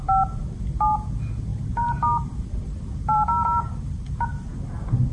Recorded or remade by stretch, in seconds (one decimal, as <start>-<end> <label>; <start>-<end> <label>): 0.0-1.5 recorded; 1.5-3.8 remade; 3.8-5.1 recorded